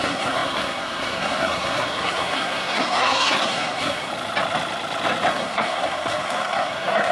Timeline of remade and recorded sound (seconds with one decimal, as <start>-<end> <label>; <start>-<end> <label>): 0.0-4.1 remade; 4.1-5.3 recorded; 5.3-7.1 remade